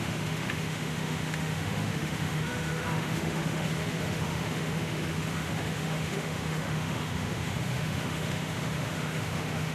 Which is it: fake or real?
fake